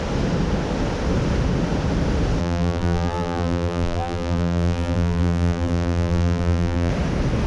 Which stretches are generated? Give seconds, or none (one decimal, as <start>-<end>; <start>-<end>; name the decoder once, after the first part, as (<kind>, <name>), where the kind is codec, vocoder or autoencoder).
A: 2.4-6.9 (vocoder, BigVGAN v2)